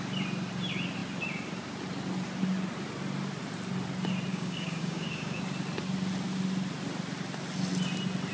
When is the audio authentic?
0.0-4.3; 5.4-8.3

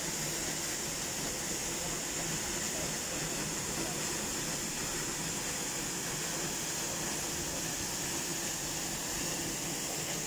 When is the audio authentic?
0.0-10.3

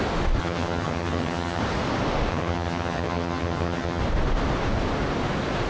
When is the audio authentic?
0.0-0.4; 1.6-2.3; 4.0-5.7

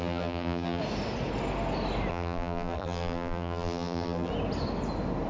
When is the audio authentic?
0.8-2.1; 4.3-5.3

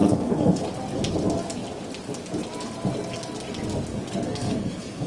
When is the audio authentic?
0.6-3.9

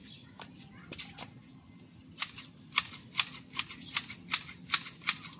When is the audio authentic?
1.8-5.4

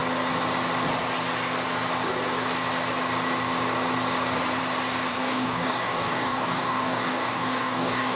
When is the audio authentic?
0.0-5.1

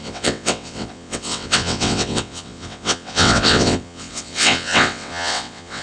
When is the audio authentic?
none